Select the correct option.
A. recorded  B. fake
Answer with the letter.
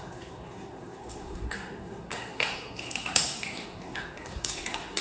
B